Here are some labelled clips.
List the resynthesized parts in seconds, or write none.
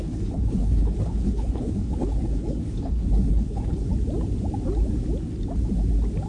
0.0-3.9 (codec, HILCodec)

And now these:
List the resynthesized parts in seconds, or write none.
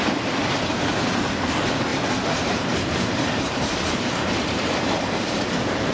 1.9-5.4 (vocoder, BigVGAN v2)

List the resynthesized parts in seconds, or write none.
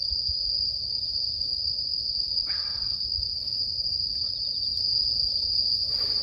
1.9-3.5 (vocoder, BigVGAN v2)